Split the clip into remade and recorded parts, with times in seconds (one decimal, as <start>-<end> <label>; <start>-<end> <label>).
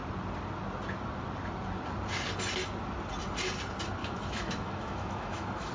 0.0-4.0 recorded; 4.0-5.7 remade